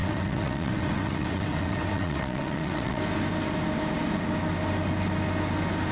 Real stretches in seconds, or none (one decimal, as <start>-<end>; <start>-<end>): 3.0-5.9

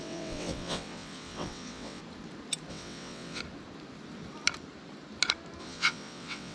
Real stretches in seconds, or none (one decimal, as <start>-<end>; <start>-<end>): 2.0-2.7; 3.4-5.6

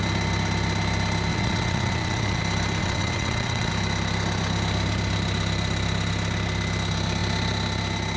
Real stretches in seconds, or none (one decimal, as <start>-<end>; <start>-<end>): 0.0-1.3; 2.4-2.8; 3.7-8.2

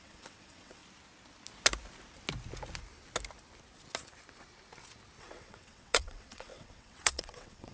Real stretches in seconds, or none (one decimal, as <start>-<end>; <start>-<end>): 0.8-5.2